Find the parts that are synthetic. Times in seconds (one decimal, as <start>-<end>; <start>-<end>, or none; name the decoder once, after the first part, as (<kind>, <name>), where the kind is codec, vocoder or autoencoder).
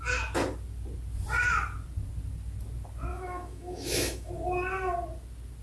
3.1-4.3 (autoencoder, DAC-VAE)